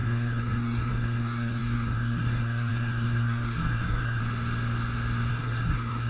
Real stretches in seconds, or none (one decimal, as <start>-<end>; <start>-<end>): 4.2-5.3